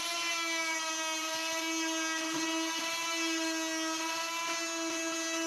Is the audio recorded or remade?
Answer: recorded